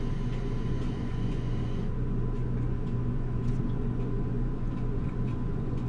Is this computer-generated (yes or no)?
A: yes